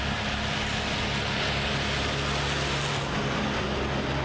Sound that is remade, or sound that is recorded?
recorded